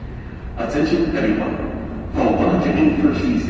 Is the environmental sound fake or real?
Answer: fake